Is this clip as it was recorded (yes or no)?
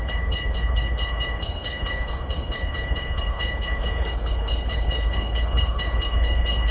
no